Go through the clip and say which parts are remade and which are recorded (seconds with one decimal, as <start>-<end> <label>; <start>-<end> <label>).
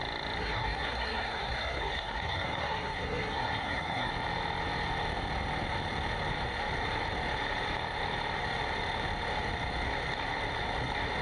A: 0.0-0.4 recorded; 0.4-4.1 remade; 4.1-11.2 recorded